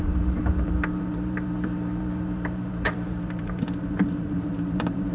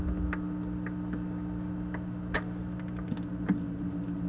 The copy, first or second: first